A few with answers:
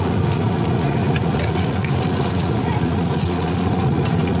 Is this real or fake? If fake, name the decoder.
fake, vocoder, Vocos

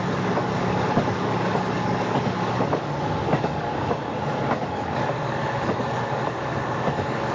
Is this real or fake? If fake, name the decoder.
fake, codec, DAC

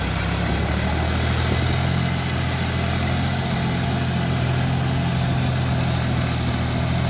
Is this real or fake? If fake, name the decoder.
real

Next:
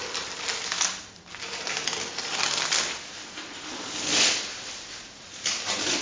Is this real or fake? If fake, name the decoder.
fake, vocoder, BigVGAN v2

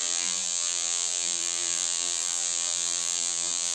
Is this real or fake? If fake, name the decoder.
fake, vocoder, BigVGAN v2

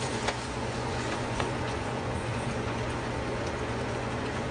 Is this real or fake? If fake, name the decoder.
fake, vocoder, Vocos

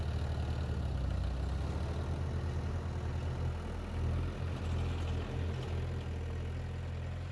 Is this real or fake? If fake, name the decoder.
real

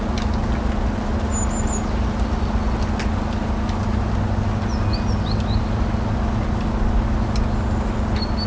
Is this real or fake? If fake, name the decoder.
real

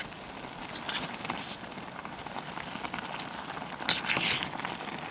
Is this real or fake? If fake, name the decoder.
real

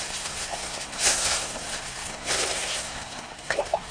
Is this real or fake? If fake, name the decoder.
fake, codec, SNAC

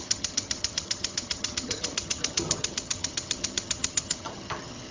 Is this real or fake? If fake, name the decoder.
fake, vocoder, HiFi-GAN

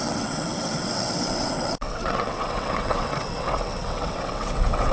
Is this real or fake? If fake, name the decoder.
fake, vocoder, WaveNeXt